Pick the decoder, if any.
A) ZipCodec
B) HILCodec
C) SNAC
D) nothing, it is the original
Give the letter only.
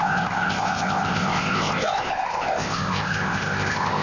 A